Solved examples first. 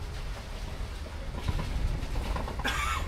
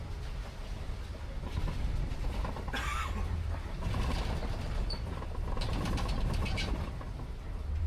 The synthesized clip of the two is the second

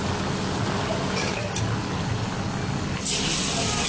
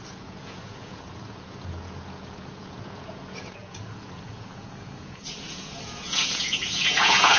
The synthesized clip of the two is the second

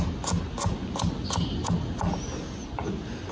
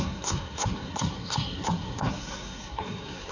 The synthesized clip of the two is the second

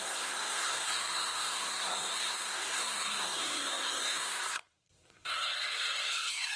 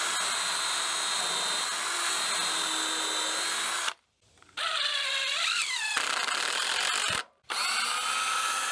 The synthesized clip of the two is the first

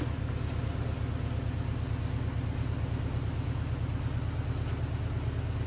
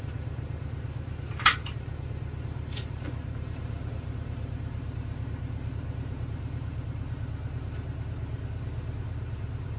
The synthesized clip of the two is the second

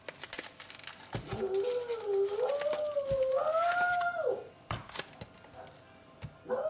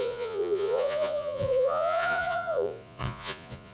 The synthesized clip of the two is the second